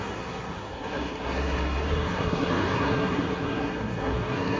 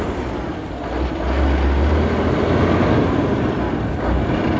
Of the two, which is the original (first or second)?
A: second